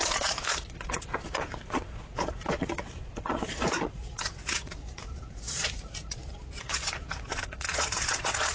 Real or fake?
fake